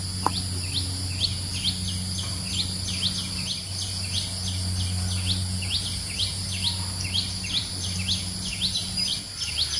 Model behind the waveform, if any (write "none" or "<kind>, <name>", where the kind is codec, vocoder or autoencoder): none